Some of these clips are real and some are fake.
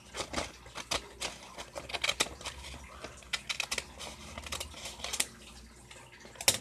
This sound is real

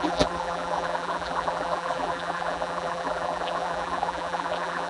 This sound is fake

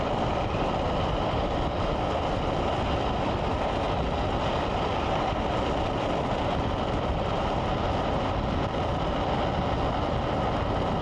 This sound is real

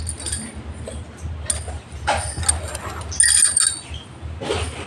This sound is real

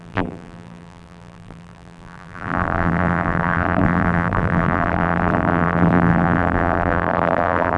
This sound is fake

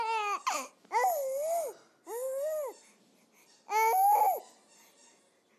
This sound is real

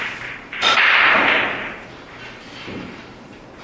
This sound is fake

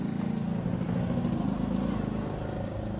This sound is real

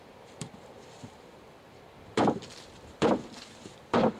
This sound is fake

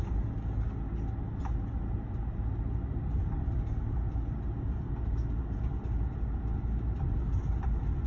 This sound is real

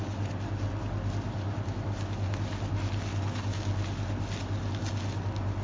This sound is real